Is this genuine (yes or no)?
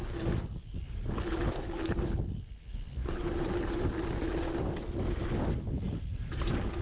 yes